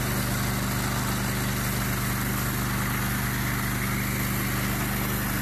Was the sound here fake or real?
real